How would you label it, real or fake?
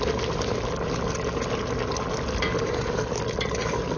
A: real